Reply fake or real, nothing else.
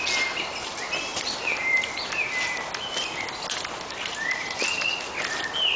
real